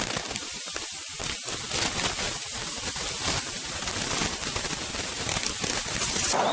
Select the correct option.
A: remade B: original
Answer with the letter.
B